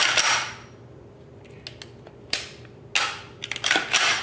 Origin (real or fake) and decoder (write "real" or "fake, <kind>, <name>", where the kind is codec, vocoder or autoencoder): real